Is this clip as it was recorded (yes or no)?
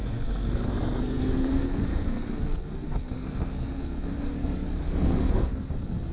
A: no